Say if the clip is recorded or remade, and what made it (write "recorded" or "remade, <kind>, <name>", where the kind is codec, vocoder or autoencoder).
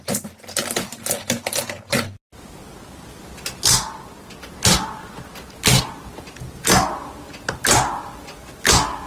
recorded